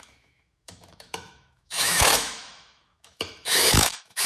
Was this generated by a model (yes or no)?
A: yes